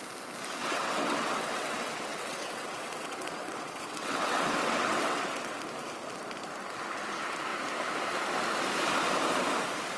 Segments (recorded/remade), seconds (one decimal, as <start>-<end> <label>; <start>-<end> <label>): 0.0-0.6 recorded; 0.6-5.6 remade; 5.6-10.0 recorded